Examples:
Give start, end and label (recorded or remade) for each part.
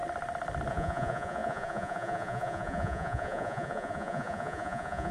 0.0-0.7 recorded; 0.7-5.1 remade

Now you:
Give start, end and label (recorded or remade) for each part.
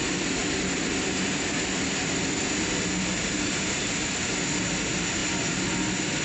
0.0-0.4 recorded; 0.4-4.1 remade; 4.1-6.2 recorded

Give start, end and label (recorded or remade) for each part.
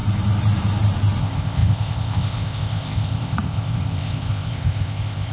0.0-1.2 recorded; 1.2-5.3 remade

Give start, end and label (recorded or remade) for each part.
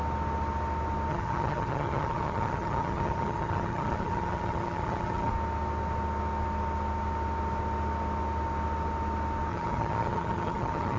0.0-1.1 recorded; 1.1-5.3 remade; 5.3-9.5 recorded; 9.5-11.0 remade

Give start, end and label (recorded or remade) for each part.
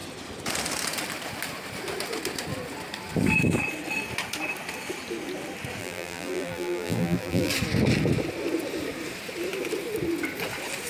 0.0-5.8 recorded; 5.8-7.5 remade; 7.5-10.9 recorded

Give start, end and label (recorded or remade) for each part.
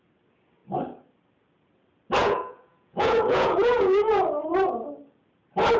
0.0-2.2 recorded; 2.2-4.2 remade; 4.2-5.8 recorded